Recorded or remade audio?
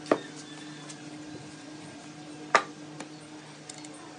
recorded